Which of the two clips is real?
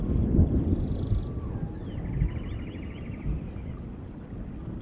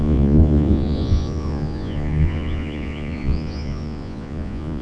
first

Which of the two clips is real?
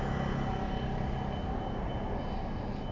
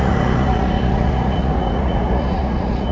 first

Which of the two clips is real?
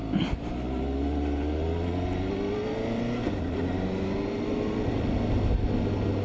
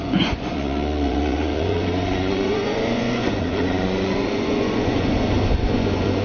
first